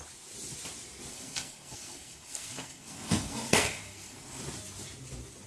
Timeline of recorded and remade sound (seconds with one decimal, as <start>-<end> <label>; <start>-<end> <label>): 0.0-1.1 recorded; 1.1-4.4 remade; 4.4-5.5 recorded